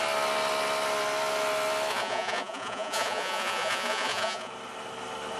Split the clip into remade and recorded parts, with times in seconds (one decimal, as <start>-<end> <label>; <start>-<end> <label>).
0.0-1.9 recorded; 1.9-4.5 remade; 4.5-5.4 recorded